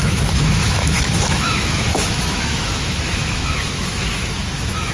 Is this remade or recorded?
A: remade